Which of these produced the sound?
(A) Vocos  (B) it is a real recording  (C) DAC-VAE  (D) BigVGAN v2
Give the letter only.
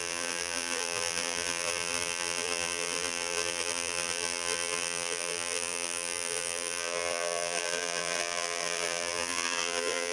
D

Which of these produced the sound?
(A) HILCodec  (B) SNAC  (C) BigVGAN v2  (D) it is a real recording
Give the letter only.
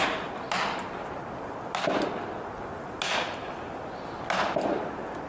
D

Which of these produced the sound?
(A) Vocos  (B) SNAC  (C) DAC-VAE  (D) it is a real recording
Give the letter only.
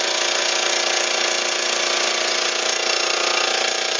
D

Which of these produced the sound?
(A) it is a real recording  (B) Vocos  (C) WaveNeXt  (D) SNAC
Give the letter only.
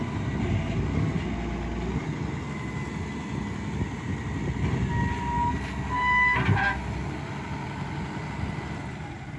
A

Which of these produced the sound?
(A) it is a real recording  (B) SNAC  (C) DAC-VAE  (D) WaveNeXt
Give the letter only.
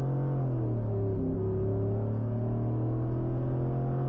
A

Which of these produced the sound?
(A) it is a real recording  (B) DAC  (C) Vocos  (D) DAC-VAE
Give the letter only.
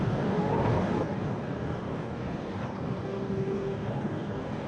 B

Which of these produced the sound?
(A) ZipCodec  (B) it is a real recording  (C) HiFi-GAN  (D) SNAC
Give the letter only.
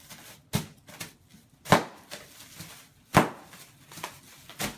B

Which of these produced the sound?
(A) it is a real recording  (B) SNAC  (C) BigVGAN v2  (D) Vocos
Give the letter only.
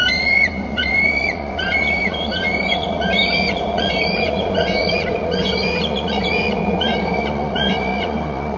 D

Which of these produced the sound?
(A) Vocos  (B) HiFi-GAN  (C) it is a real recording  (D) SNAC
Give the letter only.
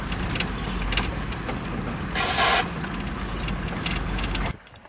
C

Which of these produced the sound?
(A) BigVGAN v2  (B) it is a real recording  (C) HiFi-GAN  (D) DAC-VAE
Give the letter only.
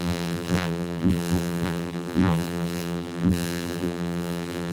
A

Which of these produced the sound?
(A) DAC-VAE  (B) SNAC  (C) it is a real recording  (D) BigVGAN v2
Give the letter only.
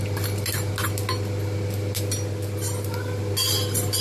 C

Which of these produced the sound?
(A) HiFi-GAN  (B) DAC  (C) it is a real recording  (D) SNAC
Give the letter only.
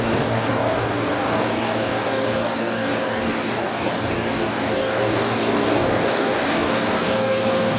B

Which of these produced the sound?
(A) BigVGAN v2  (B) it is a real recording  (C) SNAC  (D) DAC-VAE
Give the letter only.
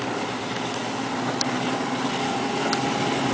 B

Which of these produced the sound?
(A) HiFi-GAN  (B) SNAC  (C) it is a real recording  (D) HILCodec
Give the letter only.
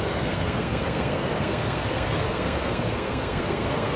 B